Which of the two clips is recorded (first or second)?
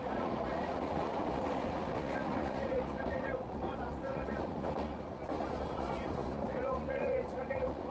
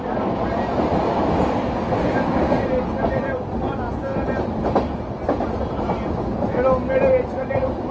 second